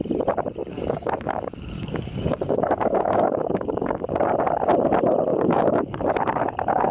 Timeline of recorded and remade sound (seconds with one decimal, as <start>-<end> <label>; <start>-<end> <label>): 0.0-0.6 recorded; 0.6-4.2 remade; 4.2-5.3 recorded; 5.3-6.1 remade; 6.1-6.9 recorded